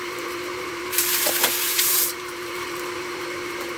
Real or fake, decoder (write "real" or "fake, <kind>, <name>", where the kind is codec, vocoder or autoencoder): fake, vocoder, BigVGAN v2